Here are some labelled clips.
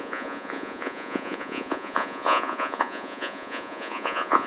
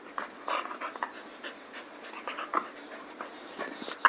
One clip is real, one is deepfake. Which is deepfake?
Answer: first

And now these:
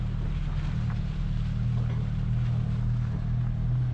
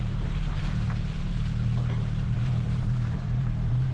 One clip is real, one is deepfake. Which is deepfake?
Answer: second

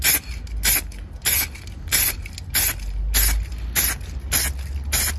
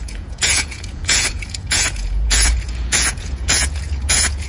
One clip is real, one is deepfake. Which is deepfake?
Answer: second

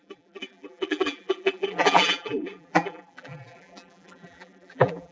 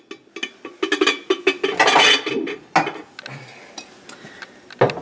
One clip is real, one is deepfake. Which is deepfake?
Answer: first